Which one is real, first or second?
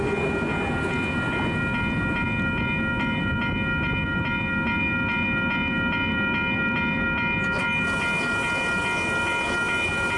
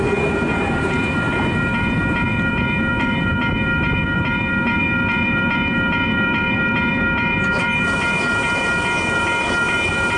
first